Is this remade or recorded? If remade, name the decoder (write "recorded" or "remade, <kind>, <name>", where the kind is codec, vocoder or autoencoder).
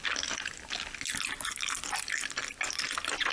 recorded